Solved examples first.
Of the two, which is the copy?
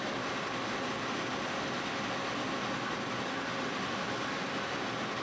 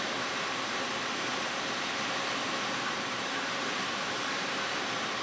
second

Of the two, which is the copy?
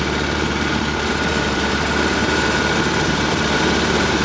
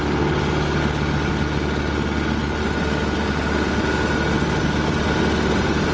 first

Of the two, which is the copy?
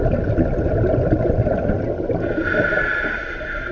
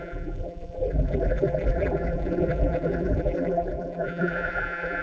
second